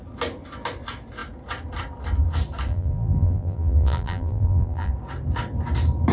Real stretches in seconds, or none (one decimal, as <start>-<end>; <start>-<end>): 0.0-2.7; 4.9-6.1